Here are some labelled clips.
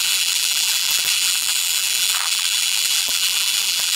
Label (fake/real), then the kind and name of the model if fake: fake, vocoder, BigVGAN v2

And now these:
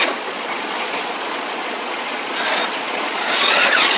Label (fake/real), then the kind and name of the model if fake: fake, vocoder, Vocos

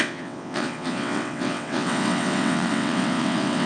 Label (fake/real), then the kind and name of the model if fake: fake, vocoder, WaveNeXt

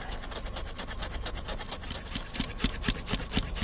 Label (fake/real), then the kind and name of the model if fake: real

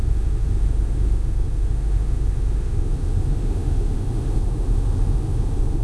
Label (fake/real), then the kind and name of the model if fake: fake, autoencoder, DAC-VAE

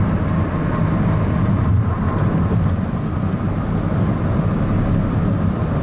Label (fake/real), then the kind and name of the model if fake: real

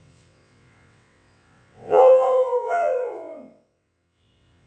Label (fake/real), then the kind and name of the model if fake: fake, vocoder, WaveNeXt